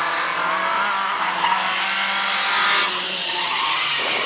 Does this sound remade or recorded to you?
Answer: recorded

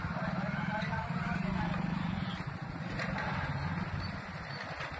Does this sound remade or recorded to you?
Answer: recorded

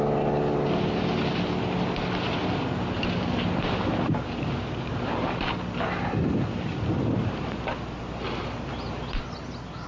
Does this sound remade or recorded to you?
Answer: recorded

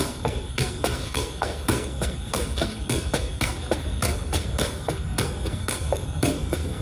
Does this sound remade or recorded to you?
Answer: remade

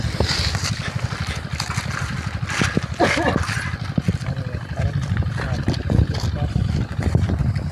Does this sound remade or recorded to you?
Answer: recorded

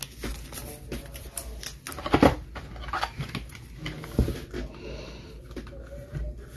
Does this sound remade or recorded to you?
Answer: recorded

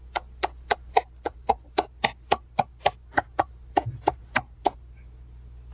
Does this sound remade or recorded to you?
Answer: recorded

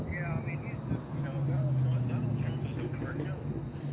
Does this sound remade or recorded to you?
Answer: recorded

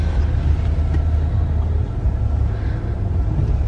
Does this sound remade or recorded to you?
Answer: recorded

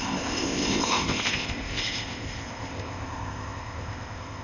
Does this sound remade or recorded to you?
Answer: remade